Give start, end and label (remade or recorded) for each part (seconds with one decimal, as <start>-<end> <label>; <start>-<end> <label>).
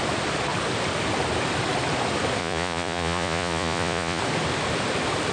0.0-2.4 recorded; 2.4-4.2 remade; 4.2-5.3 recorded